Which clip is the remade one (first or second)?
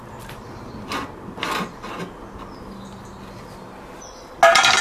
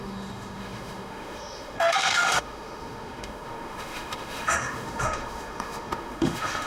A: second